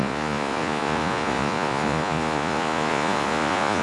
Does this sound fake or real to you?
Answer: fake